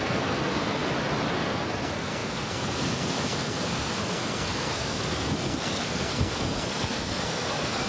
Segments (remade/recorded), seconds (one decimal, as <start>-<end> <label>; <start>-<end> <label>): 0.0-0.8 remade; 0.8-1.3 recorded; 1.3-7.9 remade